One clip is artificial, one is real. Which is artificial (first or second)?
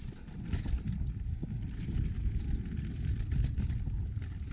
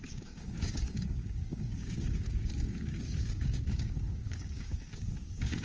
second